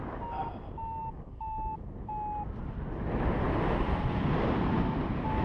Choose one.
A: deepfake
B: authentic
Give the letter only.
B